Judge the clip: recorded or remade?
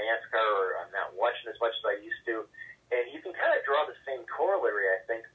recorded